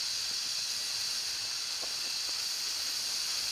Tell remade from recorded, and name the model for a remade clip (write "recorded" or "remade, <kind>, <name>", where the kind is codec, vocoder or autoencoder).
recorded